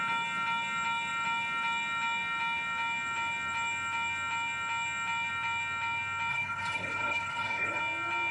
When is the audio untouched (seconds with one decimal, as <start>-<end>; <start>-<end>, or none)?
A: 0.0-6.3; 7.8-8.3

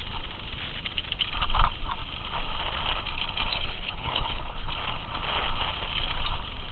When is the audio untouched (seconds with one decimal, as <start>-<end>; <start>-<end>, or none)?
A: 0.0-3.5; 4.7-6.7

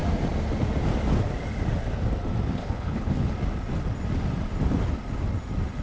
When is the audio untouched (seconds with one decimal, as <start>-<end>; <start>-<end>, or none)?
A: 0.0-2.6; 3.3-5.8

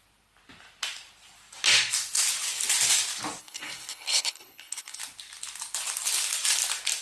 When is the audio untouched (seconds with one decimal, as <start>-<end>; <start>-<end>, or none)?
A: 0.0-3.4; 5.0-7.0

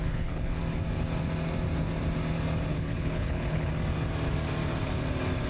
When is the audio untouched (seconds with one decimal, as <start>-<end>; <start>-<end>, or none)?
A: 0.6-2.7; 3.7-5.5